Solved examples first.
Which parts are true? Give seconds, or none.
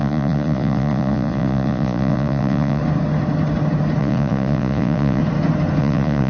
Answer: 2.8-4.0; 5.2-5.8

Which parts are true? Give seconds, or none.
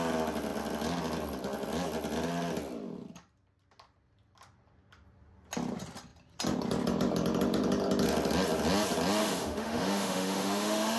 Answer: 0.0-9.2